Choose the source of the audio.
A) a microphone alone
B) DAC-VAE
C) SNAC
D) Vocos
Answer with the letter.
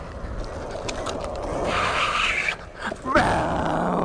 A